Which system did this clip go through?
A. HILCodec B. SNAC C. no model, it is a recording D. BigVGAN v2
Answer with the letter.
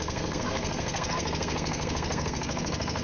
B